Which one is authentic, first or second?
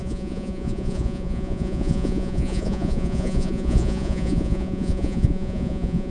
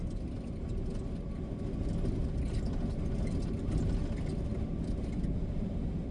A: second